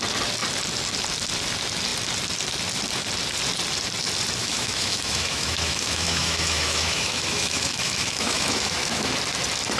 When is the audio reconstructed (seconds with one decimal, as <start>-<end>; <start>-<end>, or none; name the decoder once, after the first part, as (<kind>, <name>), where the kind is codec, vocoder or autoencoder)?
4.4-9.1 (autoencoder, DAC-VAE)